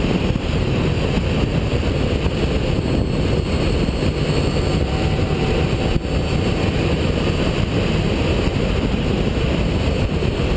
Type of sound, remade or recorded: recorded